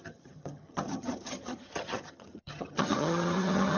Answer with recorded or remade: remade